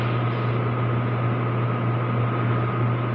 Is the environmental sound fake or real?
real